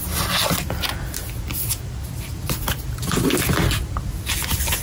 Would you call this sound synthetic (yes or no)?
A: no